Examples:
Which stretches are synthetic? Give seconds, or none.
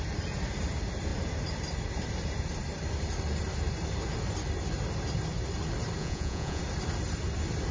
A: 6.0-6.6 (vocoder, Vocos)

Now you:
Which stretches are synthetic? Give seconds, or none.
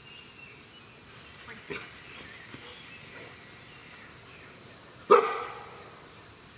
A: none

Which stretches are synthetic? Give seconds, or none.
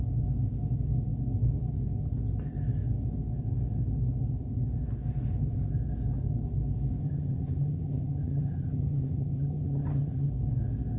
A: 7.0-10.3 (vocoder, HiFi-GAN)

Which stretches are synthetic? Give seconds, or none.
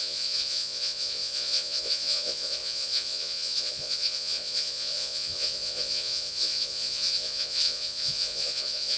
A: 0.0-9.0 (vocoder, Vocos)